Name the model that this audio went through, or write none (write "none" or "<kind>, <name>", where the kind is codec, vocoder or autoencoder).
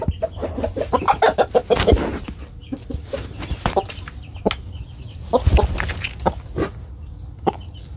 none